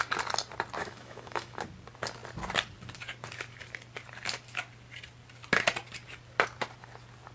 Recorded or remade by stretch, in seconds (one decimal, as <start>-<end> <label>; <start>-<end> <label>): 0.0-0.8 recorded; 0.8-1.6 remade; 1.6-7.3 recorded